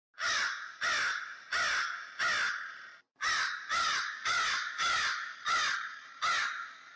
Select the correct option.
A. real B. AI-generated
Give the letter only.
A